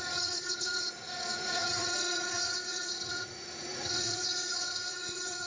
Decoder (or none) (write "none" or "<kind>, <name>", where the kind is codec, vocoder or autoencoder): vocoder, Vocos